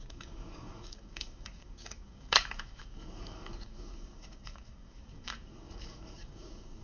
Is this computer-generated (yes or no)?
yes